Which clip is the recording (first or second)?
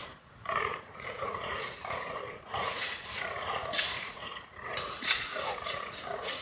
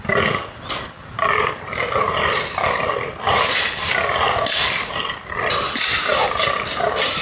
second